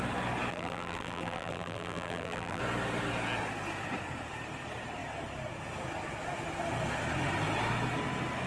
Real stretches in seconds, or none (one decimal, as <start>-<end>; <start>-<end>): 0.0-0.5; 2.6-8.5